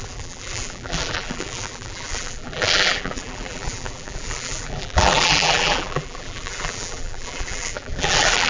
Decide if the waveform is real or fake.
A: fake